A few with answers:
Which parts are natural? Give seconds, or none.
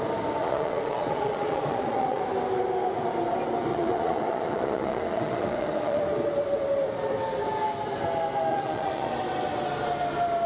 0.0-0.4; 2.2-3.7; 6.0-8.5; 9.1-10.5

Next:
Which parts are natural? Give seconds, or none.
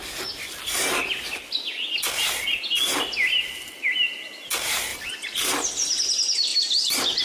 0.0-7.2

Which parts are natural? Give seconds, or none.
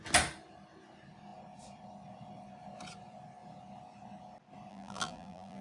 0.0-4.7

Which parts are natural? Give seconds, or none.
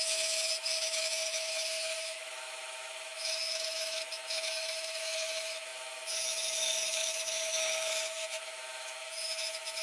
none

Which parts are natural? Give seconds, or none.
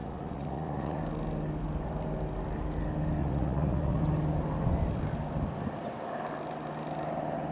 1.0-3.2; 4.0-7.5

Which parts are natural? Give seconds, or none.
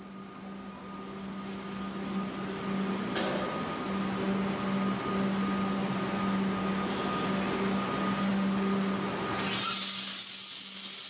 0.0-11.1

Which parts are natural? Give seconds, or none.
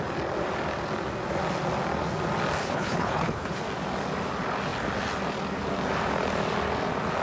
0.0-2.6; 3.6-7.2